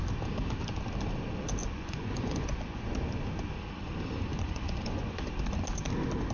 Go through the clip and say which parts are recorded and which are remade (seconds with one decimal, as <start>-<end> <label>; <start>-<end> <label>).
0.0-1.6 recorded; 1.6-2.8 remade; 2.8-4.3 recorded; 4.3-5.2 remade; 5.2-6.3 recorded